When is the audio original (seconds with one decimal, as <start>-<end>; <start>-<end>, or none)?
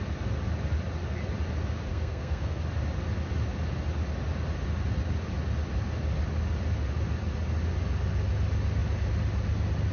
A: 0.0-1.9; 2.6-9.9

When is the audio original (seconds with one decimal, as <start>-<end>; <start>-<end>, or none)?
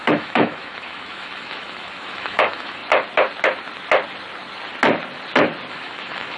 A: 2.8-5.7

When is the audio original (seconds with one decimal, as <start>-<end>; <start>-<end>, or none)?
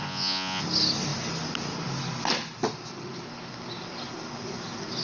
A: 0.6-5.0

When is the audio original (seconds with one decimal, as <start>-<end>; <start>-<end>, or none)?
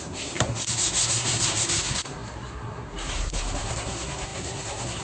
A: none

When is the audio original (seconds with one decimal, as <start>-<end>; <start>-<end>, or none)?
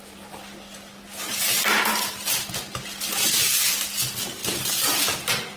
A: 0.0-5.6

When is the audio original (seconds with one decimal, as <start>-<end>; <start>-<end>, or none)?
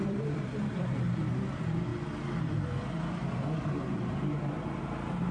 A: 1.9-3.8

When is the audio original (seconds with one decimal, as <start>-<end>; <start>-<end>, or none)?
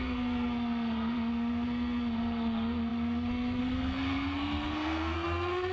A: none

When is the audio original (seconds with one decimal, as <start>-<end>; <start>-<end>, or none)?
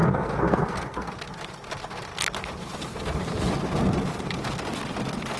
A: 1.1-5.4